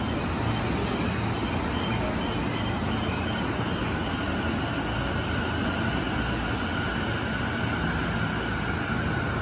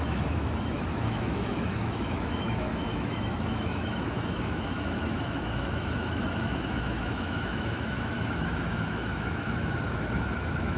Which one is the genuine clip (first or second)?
first